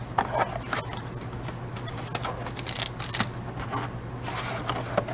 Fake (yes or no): no